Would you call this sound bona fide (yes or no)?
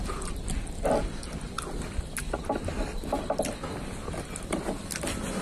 yes